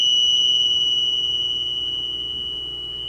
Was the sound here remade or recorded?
recorded